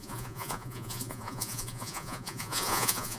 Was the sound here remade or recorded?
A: remade